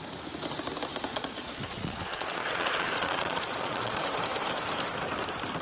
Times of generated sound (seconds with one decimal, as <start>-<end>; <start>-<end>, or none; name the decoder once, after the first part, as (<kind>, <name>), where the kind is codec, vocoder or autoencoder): 1.1-4.2 (vocoder, Vocos)